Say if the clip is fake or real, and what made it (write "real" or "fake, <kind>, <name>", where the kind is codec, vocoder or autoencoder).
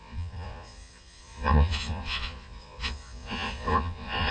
fake, vocoder, Vocos